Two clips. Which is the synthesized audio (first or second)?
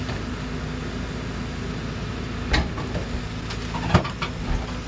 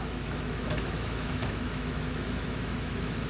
second